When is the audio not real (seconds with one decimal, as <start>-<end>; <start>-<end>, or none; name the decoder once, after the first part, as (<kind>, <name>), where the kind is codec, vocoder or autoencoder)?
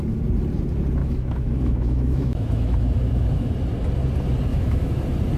1.0-3.5 (autoencoder, DAC-VAE); 4.5-5.0